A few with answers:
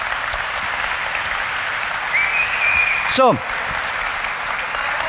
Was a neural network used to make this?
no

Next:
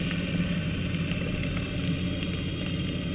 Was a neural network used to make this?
no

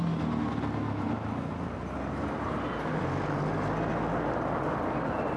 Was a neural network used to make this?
no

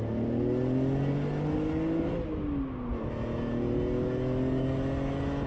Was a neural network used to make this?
no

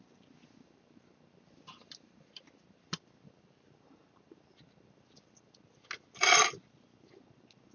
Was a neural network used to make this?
no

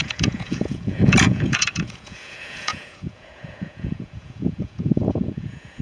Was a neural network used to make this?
yes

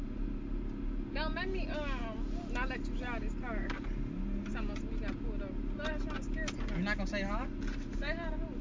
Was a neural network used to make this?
no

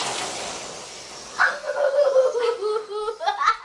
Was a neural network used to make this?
no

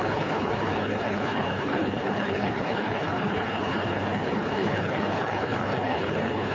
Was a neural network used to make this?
yes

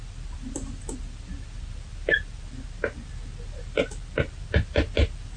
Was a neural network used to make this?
no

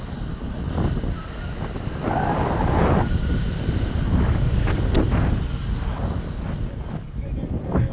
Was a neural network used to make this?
no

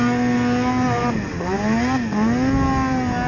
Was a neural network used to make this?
no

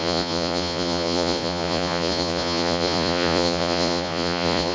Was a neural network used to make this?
yes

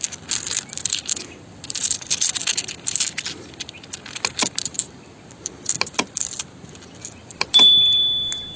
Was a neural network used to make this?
no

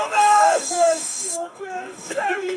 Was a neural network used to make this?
yes